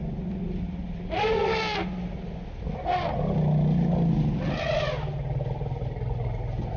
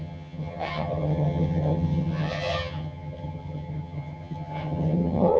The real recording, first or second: first